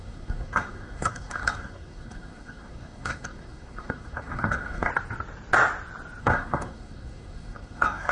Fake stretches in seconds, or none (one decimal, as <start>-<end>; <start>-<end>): 0.0-4.9; 6.2-8.1